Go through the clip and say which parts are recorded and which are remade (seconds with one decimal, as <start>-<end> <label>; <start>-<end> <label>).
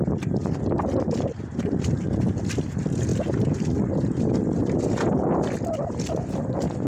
0.0-6.9 recorded